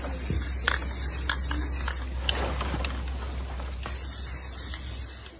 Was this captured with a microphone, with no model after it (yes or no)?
yes